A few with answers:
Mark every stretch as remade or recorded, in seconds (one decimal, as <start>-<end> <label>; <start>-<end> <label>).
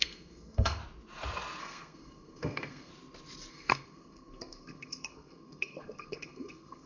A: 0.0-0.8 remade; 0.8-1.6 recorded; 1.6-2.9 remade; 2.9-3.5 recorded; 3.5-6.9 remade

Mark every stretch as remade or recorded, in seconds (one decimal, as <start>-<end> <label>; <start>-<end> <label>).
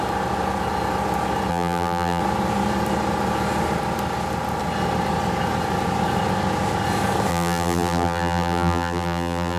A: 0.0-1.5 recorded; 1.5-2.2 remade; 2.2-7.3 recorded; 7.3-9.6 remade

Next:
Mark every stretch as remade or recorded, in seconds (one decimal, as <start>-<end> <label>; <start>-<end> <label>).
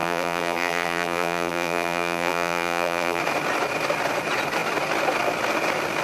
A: 0.0-3.2 remade; 3.2-6.0 recorded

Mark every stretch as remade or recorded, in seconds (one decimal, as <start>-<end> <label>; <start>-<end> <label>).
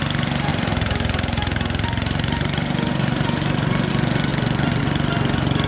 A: 0.0-0.5 recorded; 0.5-3.9 remade; 3.9-5.7 recorded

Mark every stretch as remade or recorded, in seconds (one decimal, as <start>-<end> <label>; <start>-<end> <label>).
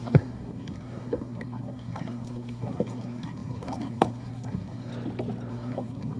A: 0.0-4.9 remade; 4.9-5.5 recorded; 5.5-6.2 remade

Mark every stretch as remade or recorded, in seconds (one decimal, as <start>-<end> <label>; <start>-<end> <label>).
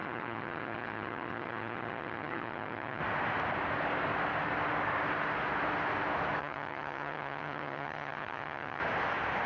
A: 0.0-3.0 remade; 3.0-6.4 recorded; 6.4-8.8 remade; 8.8-9.5 recorded